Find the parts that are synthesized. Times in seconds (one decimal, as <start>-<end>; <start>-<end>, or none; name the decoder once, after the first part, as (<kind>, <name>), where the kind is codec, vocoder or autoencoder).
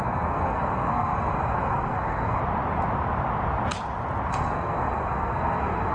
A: 0.0-2.4 (codec, SNAC); 4.3-5.9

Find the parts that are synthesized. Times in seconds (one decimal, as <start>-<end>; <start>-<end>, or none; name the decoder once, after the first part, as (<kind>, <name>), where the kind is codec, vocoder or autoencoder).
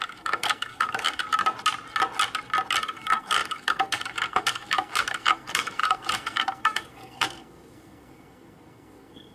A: 0.0-1.2 (codec, SNAC); 2.8-9.3